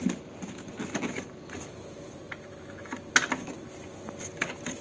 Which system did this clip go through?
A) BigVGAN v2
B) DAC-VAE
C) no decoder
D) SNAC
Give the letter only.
C